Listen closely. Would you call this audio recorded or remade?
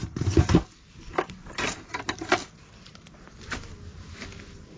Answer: recorded